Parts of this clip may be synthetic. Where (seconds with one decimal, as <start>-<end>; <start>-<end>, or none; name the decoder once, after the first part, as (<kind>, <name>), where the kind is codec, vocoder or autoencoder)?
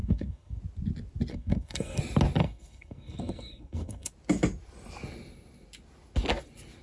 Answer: 0.0-0.6 (codec, SNAC); 1.3-2.0; 2.4-4.1